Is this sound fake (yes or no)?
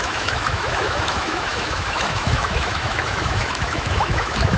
yes